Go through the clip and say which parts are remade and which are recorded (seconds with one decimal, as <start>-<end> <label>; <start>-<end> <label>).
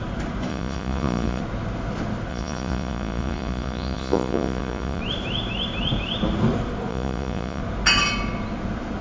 0.0-0.5 recorded; 0.5-1.4 remade; 1.4-2.3 recorded; 2.3-5.0 remade; 5.0-6.9 recorded; 6.9-7.6 remade; 7.6-9.0 recorded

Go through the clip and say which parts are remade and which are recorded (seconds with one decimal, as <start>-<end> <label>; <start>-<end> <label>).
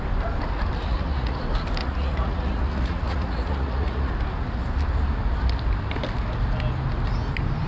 0.0-0.8 recorded; 0.8-1.4 remade; 1.4-1.8 recorded; 1.8-4.1 remade; 4.1-7.7 recorded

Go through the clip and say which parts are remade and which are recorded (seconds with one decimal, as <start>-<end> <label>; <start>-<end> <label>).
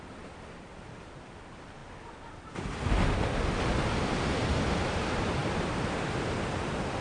0.0-7.0 recorded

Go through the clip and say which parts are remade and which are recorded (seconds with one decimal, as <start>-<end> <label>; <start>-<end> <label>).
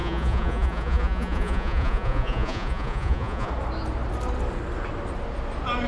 0.0-3.5 remade; 3.5-5.9 recorded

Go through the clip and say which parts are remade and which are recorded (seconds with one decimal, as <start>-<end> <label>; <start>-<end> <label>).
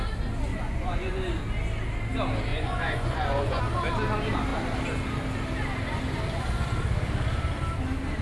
0.0-0.5 recorded; 0.5-1.3 remade; 1.3-2.5 recorded; 2.5-3.6 remade; 3.6-8.2 recorded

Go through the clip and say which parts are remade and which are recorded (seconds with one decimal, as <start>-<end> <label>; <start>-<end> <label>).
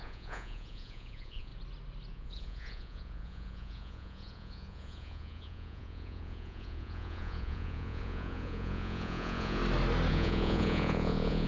0.0-1.5 remade; 1.5-2.1 recorded; 2.1-9.6 remade; 9.6-10.1 recorded; 10.1-11.5 remade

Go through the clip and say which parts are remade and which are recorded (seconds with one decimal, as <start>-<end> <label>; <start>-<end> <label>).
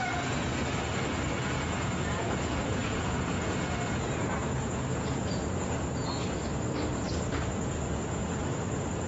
0.0-0.5 remade; 0.5-1.3 recorded; 1.3-6.1 remade; 6.1-7.3 recorded; 7.3-9.1 remade